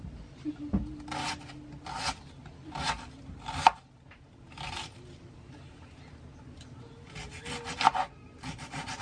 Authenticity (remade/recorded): recorded